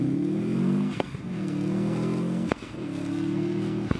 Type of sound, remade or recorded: remade